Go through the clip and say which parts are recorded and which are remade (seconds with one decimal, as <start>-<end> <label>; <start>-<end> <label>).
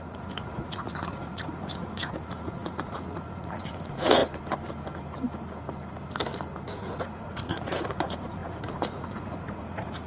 0.0-4.2 remade; 4.2-6.7 recorded; 6.7-10.1 remade